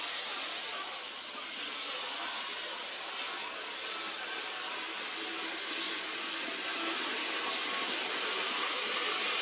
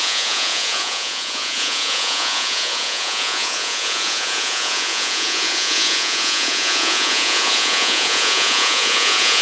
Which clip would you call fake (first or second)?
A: second